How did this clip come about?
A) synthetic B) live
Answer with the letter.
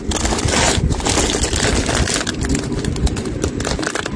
B